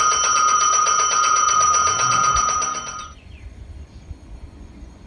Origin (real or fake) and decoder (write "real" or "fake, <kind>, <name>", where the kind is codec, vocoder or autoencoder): fake, vocoder, Vocos